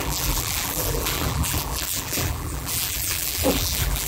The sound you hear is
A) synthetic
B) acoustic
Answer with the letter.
A